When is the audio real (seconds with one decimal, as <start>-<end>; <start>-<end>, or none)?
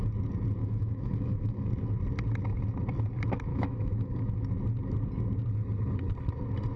0.0-0.6; 1.7-3.5; 4.2-6.8